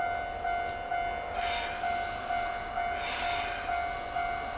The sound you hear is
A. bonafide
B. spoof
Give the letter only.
A